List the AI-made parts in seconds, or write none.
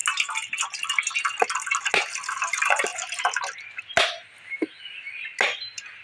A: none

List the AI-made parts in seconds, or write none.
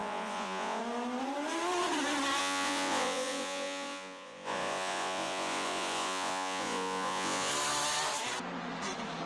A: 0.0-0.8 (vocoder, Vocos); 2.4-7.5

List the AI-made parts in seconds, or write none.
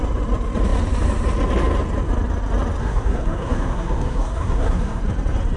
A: 2.8-5.0 (codec, SNAC)